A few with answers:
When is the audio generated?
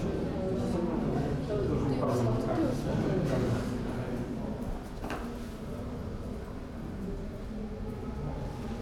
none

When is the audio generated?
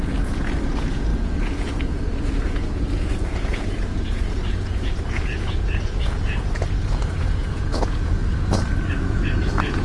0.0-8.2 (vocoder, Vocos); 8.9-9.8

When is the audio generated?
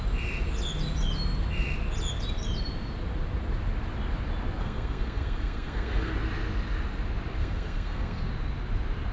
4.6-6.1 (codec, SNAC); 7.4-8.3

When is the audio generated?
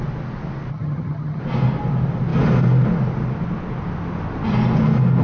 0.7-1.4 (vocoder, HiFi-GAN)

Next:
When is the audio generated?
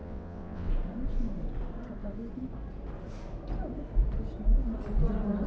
0.0-0.7 (vocoder, WaveNeXt)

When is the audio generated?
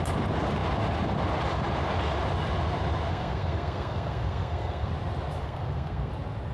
3.1-4.9 (codec, SNAC); 5.4-6.1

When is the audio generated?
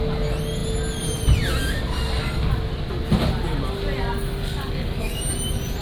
4.0-5.2 (codec, DAC)